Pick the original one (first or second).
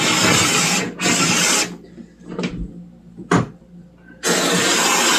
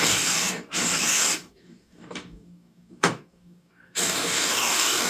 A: first